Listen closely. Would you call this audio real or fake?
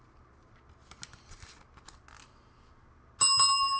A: real